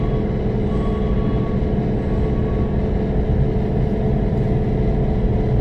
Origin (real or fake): real